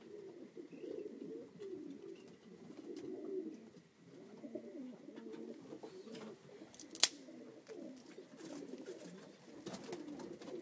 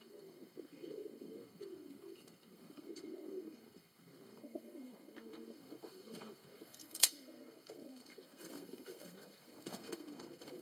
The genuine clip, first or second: first